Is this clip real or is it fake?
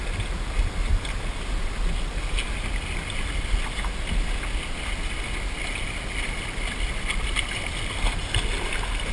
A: real